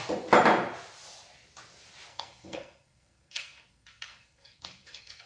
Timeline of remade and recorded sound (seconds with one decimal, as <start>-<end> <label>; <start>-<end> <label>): 0.0-2.1 recorded; 2.1-5.3 remade